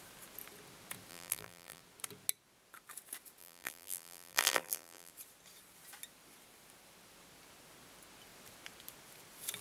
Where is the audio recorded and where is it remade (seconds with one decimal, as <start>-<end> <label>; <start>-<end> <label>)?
0.0-1.1 recorded; 1.1-1.8 remade; 1.8-3.4 recorded; 3.4-5.1 remade; 5.1-9.6 recorded